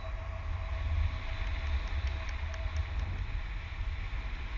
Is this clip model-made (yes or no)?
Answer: no